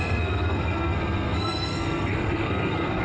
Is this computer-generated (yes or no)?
yes